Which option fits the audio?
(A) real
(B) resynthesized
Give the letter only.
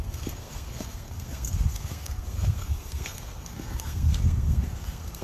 B